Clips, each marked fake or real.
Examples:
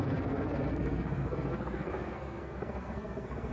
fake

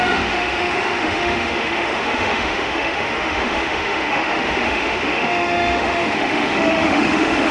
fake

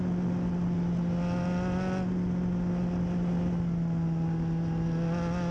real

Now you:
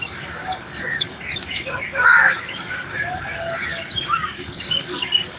fake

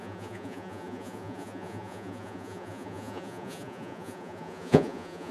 fake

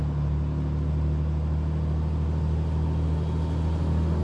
real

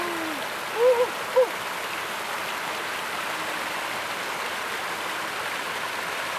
real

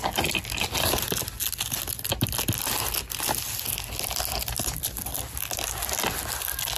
real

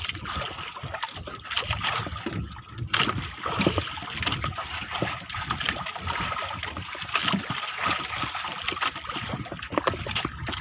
real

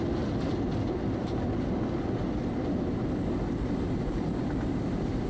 real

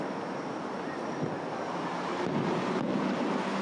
real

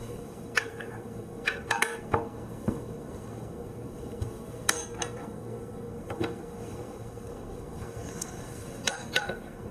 fake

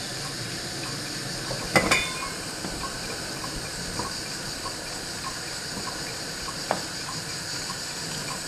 fake